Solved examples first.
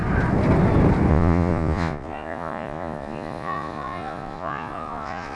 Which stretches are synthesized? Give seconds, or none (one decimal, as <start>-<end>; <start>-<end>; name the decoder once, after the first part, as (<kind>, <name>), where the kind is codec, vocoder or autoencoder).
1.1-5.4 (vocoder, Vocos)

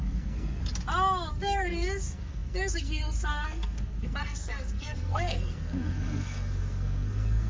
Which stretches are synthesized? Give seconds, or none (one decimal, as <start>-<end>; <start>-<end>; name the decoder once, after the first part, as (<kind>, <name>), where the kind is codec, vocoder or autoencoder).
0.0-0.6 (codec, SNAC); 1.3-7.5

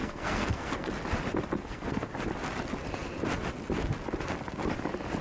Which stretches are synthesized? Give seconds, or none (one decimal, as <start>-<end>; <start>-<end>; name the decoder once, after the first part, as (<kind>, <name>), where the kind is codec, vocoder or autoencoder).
0.0-0.9 (codec, SNAC); 1.6-2.1

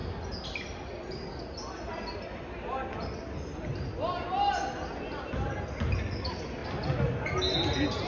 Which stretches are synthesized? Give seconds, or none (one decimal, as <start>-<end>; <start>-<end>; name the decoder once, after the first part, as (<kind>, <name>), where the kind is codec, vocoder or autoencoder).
none

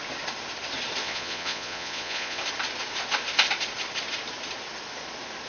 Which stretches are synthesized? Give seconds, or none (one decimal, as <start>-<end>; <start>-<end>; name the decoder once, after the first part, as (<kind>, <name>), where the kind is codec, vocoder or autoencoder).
1.0-2.4 (vocoder, Vocos)

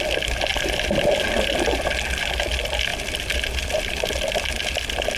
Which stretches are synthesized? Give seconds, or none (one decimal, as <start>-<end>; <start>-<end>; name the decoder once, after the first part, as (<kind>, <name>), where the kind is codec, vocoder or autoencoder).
0.5-1.9 (vocoder, BigVGAN v2); 2.9-4.5